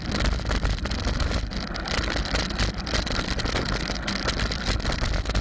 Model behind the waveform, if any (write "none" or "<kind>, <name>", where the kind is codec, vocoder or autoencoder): none